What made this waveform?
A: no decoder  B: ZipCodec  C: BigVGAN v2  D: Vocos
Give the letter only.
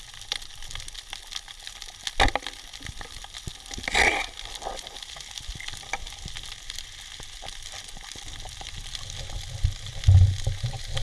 A